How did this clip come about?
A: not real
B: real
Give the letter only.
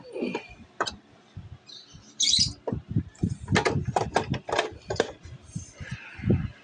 A